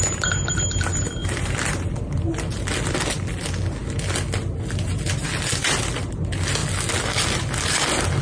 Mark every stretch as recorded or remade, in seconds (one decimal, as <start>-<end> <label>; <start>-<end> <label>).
0.0-1.2 recorded; 1.2-2.0 remade; 2.0-8.2 recorded